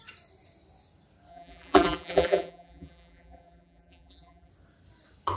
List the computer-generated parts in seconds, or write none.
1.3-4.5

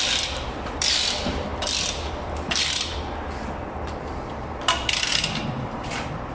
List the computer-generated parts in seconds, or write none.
0.0-1.5; 2.2-2.9; 5.1-6.3